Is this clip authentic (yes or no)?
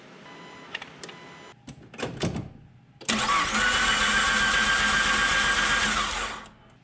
yes